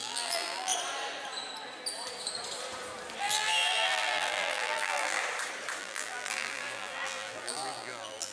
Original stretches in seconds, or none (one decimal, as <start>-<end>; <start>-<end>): 0.7-3.2; 5.2-5.8